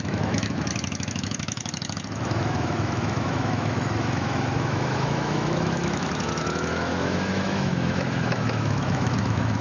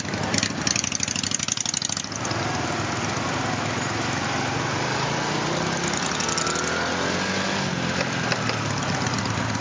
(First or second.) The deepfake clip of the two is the first